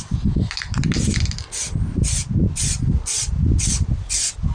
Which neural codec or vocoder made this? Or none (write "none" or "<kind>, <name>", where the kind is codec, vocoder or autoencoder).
none